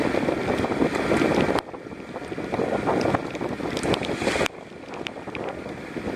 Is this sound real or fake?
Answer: real